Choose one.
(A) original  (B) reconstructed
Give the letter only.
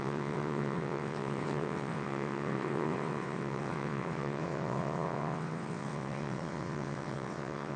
B